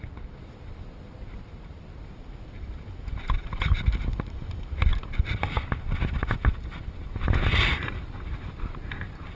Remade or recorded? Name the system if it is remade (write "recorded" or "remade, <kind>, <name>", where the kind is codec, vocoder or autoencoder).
recorded